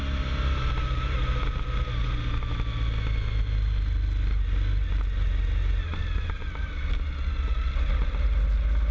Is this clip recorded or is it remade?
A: recorded